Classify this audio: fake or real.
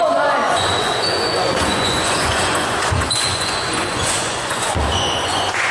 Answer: fake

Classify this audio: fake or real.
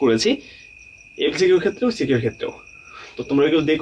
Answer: real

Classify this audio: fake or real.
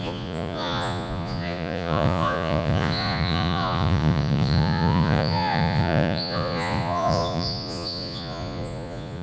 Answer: fake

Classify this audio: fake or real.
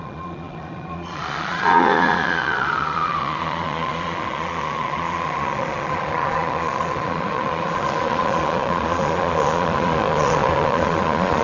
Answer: fake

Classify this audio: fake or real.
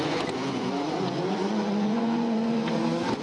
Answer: fake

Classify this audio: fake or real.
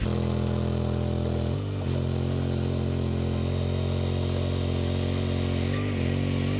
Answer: real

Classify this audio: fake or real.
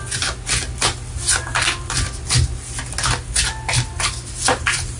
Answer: real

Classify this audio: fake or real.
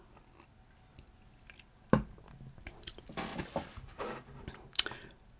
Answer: real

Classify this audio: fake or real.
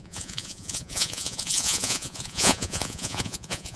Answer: fake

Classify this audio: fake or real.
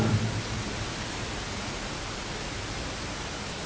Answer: real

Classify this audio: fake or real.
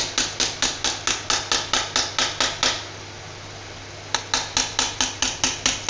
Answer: real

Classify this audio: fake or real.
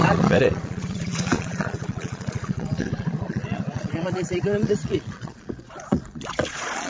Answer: fake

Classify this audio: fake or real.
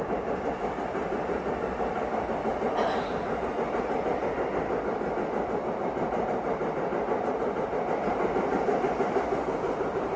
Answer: real